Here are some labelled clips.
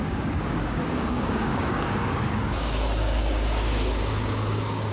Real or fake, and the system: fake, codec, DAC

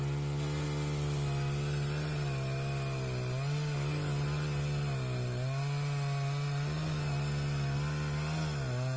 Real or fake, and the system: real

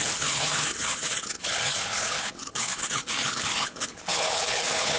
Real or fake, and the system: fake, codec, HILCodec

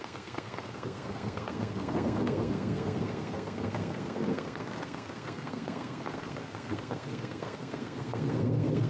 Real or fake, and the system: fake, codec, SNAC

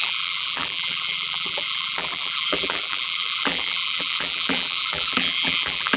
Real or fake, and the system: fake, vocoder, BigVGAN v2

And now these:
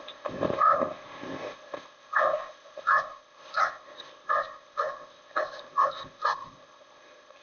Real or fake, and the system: fake, codec, ZipCodec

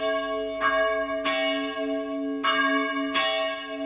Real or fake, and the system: real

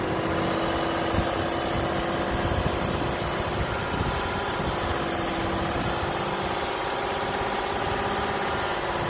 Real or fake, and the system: real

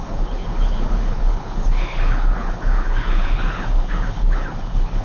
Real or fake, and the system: fake, codec, HILCodec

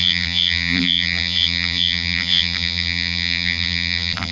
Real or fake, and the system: fake, vocoder, BigVGAN v2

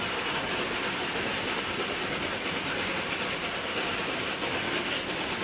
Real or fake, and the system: real